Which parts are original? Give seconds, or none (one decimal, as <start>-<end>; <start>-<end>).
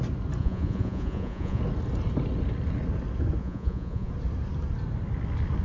0.0-0.4; 1.6-3.4; 4.1-5.6